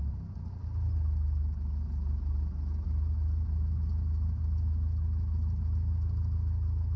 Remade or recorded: recorded